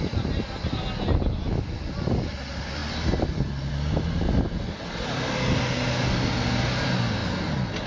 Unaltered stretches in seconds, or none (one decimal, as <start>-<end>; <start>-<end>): 0.0-7.9